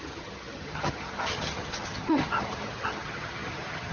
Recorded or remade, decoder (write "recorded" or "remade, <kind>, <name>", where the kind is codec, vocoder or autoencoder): remade, vocoder, HiFi-GAN